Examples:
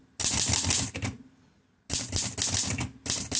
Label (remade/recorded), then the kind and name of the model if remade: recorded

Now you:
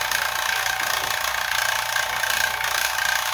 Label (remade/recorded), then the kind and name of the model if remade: recorded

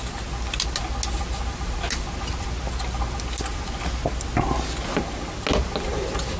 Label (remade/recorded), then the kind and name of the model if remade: recorded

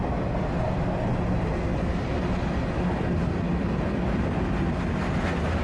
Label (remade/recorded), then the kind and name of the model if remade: recorded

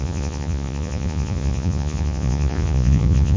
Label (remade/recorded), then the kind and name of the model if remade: remade, vocoder, Vocos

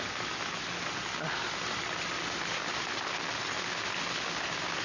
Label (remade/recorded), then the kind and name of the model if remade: recorded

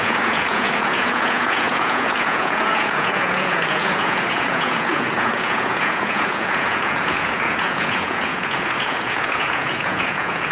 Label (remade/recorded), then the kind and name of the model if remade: remade, vocoder, Vocos